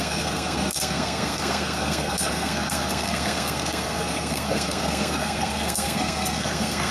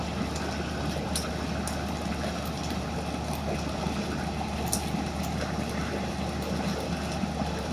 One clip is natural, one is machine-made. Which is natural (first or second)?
second